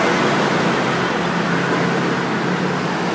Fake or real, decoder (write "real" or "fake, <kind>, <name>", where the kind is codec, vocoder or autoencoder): real